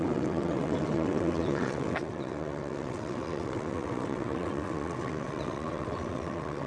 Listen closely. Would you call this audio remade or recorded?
remade